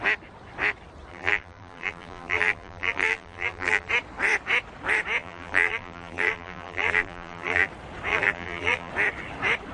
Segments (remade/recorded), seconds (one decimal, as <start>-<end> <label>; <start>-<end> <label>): 0.0-1.1 recorded; 1.1-3.9 remade; 3.9-5.2 recorded; 5.2-7.7 remade; 7.7-8.1 recorded; 8.1-8.9 remade; 8.9-9.7 recorded